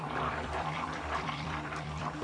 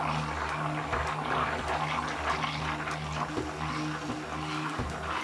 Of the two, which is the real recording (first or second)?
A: second